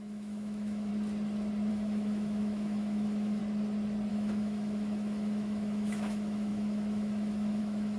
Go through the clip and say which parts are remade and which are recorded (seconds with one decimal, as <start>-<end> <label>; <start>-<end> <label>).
0.0-0.9 remade; 0.9-1.7 recorded; 1.7-3.4 remade; 3.4-4.1 recorded; 4.1-8.0 remade